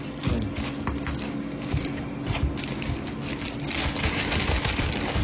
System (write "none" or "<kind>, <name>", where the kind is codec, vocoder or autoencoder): none